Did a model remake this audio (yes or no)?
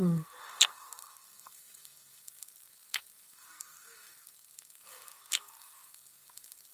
yes